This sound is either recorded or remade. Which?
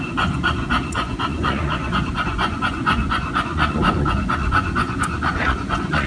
remade